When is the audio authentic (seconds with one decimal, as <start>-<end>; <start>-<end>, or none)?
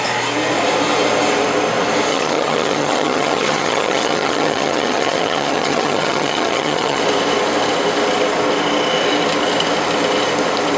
0.0-2.1; 7.0-10.8